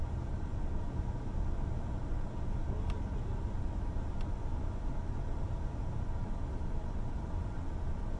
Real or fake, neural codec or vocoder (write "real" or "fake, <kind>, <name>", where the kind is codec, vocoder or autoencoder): real